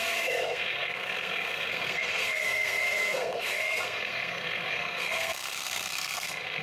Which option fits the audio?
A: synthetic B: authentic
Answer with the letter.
A